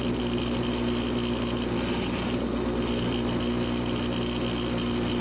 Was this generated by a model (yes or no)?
no